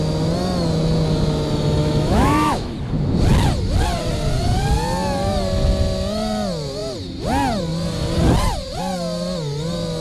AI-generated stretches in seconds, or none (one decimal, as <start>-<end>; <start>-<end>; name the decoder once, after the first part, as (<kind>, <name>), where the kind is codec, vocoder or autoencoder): 1.8-2.7 (autoencoder, DAC-VAE)